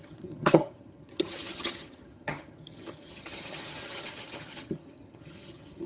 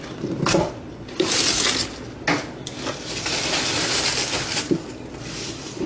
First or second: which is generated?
first